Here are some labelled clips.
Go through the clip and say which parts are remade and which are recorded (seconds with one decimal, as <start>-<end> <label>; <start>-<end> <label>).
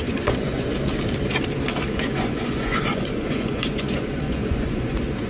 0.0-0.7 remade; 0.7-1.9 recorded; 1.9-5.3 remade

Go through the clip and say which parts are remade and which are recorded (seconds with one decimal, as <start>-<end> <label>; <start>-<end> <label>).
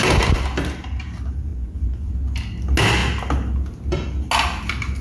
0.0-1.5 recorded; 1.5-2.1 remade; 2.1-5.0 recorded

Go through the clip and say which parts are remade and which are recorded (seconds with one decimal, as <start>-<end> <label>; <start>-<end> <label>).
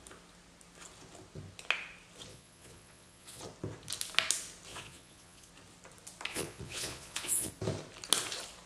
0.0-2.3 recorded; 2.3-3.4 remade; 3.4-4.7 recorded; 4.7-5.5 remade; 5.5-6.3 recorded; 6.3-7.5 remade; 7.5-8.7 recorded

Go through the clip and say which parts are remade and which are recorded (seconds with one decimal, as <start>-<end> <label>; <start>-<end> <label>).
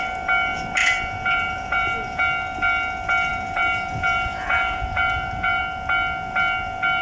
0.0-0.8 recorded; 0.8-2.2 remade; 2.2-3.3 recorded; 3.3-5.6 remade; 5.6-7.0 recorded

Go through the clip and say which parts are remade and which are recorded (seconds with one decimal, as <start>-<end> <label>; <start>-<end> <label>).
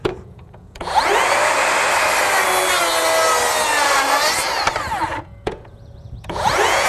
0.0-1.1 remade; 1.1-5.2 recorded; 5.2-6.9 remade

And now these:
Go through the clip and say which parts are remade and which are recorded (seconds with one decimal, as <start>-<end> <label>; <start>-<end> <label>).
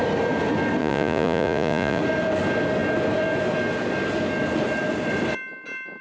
0.0-0.8 recorded; 0.8-2.0 remade; 2.0-6.0 recorded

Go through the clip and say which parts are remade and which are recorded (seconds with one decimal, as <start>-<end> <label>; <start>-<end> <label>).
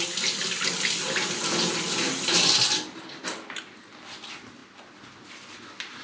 0.0-6.0 recorded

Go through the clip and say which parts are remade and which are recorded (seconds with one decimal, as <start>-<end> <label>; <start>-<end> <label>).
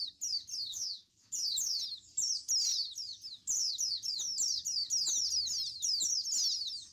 0.0-0.7 recorded; 0.7-1.3 remade; 1.3-6.9 recorded